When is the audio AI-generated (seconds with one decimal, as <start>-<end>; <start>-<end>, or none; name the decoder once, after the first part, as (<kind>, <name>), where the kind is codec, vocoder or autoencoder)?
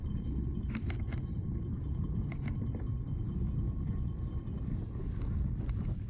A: none